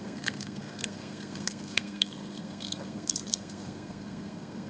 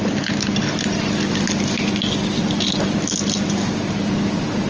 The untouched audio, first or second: second